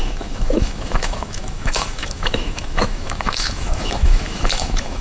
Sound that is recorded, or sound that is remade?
remade